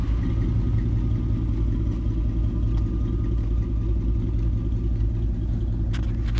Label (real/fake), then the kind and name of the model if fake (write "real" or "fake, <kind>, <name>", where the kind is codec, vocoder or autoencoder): real